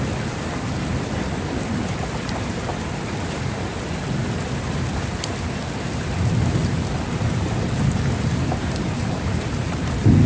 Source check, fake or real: fake